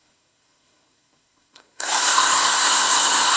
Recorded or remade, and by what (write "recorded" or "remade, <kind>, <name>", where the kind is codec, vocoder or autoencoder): remade, codec, SNAC